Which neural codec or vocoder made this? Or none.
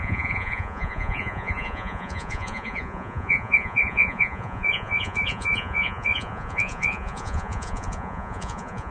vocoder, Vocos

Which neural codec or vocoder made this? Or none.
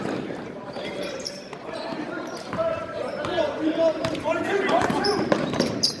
vocoder, BigVGAN v2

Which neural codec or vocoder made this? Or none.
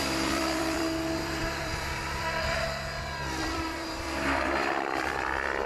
vocoder, BigVGAN v2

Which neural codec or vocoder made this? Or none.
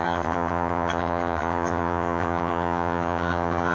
vocoder, HiFi-GAN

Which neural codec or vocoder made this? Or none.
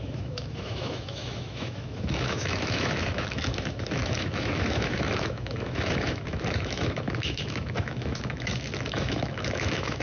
autoencoder, DAC-VAE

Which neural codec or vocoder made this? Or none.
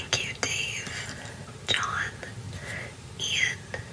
none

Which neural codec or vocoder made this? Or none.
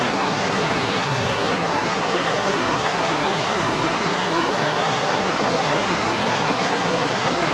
codec, SNAC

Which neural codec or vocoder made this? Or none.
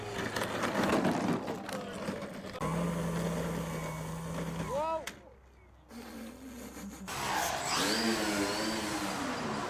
none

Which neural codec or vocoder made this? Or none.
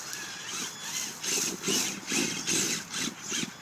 none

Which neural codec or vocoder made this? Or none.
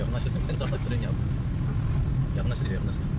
none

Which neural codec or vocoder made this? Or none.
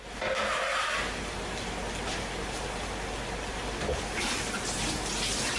none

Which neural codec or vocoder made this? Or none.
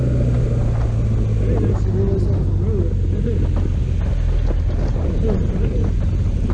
none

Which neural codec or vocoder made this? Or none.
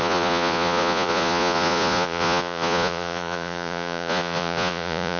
vocoder, Vocos